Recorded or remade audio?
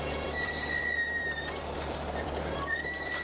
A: remade